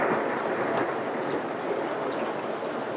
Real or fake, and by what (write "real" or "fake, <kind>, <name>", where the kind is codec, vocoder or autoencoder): real